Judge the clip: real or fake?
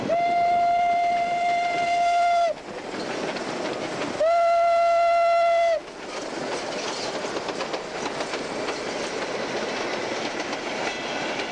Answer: real